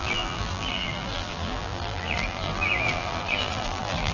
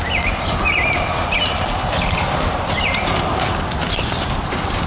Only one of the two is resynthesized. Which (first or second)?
first